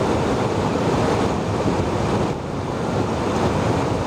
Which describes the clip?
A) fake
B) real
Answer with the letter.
A